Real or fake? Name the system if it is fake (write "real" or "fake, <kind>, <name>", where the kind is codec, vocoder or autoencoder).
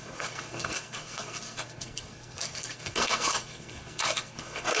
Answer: fake, codec, SNAC